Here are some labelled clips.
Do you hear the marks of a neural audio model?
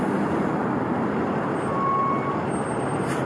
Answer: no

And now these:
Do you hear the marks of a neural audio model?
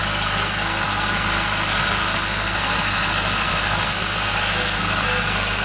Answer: yes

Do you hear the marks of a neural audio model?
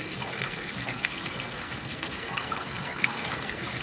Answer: yes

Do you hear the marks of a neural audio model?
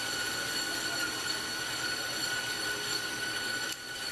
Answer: no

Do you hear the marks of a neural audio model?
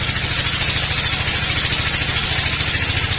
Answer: no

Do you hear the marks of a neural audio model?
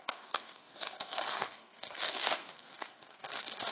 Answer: yes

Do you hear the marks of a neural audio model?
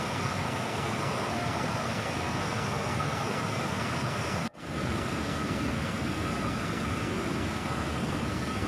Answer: yes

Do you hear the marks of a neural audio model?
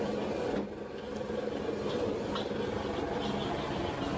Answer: no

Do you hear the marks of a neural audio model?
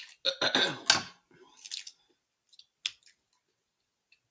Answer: no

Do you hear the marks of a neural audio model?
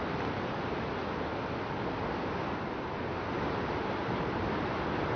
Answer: no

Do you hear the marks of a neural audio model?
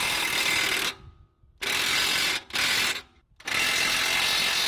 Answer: no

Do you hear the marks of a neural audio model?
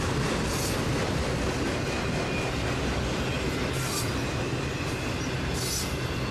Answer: no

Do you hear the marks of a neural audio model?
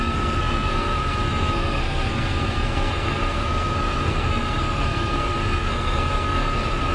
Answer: yes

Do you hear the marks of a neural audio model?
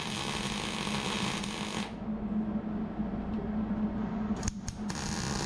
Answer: no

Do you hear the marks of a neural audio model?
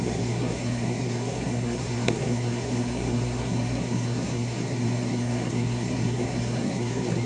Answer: yes